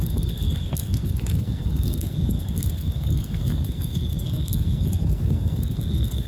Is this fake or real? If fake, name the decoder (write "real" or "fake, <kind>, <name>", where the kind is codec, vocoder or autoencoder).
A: fake, codec, SNAC